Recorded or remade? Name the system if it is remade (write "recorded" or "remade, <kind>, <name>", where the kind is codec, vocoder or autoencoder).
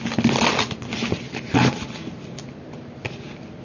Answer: recorded